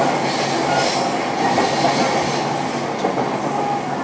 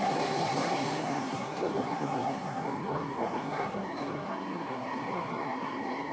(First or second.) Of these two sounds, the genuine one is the first